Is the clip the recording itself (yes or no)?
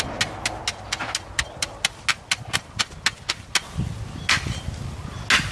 yes